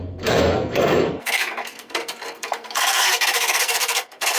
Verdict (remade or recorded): remade